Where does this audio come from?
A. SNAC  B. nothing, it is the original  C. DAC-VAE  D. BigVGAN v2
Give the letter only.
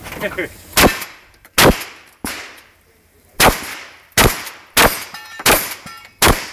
B